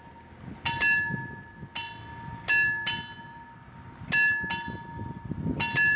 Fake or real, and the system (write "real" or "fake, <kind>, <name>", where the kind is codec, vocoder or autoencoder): real